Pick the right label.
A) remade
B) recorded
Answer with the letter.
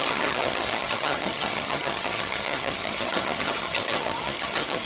A